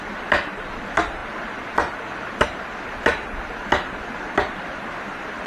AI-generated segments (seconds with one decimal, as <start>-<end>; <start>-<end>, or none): none